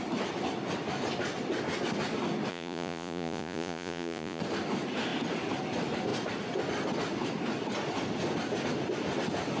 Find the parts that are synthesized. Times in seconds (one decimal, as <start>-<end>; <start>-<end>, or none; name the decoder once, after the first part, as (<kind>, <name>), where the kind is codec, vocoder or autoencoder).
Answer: 2.5-4.4 (vocoder, Vocos)